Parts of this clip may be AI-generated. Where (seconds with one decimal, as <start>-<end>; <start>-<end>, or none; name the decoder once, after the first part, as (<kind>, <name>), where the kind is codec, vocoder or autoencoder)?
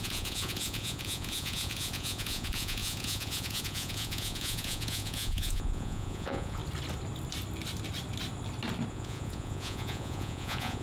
0.0-6.6 (vocoder, Vocos); 8.9-10.8